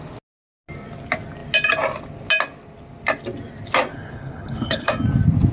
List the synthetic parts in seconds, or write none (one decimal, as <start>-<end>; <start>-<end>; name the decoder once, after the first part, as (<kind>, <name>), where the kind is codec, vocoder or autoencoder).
3.9-4.9 (codec, HILCodec)